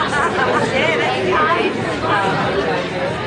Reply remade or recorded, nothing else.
recorded